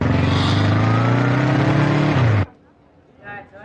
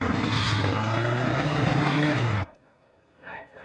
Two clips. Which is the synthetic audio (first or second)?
second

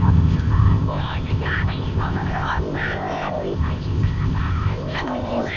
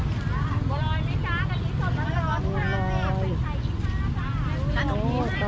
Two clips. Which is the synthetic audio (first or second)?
first